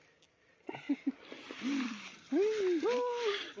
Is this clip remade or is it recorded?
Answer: recorded